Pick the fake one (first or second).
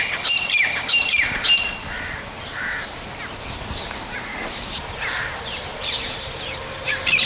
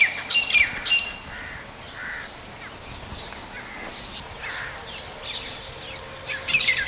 first